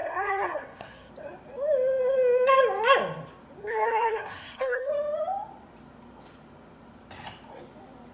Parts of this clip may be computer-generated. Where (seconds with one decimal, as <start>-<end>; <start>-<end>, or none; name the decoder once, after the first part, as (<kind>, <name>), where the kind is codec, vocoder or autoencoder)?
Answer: 0.0-1.1 (codec, SNAC); 3.6-4.9